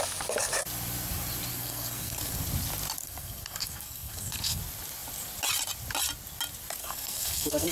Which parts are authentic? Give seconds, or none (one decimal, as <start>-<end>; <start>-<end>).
0.0-1.5; 2.4-3.0; 4.6-6.8